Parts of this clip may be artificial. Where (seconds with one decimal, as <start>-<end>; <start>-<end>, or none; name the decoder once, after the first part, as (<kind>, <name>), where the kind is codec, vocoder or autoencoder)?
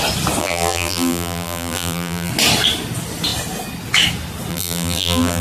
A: 0.4-2.3 (vocoder, BigVGAN v2); 4.5-5.4